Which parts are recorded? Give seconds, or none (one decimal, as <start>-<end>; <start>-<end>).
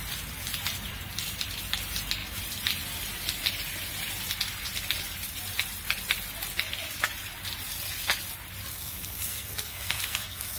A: 0.0-8.7